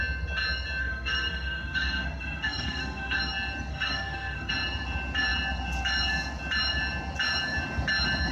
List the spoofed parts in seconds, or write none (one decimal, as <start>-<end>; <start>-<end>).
0.8-3.2; 3.7-4.5